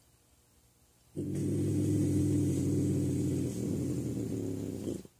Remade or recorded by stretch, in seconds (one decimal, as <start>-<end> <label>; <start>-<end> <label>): 0.0-5.2 recorded